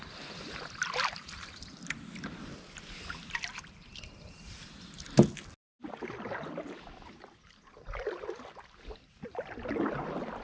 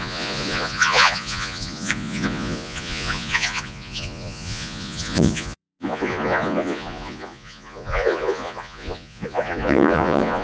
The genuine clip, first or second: first